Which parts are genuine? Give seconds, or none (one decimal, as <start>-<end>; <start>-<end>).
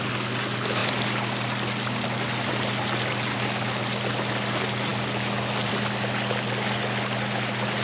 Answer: 0.0-7.8